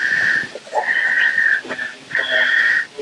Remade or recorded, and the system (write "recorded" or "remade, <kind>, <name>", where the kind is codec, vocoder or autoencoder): recorded